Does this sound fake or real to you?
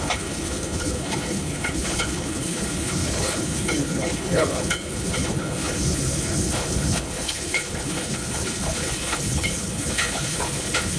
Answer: fake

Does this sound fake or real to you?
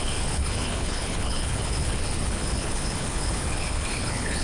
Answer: fake